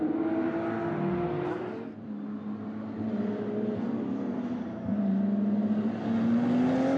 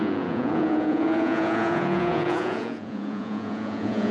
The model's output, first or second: second